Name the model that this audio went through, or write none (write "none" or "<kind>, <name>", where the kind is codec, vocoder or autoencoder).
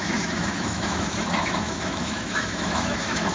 autoencoder, DAC-VAE